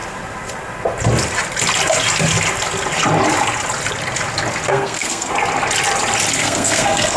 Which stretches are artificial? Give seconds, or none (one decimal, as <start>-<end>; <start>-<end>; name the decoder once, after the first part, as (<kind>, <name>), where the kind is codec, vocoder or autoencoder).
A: 4.7-5.3 (codec, SNAC); 6.4-7.2